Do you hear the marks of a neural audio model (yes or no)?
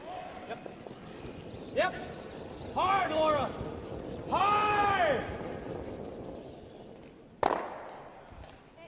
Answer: no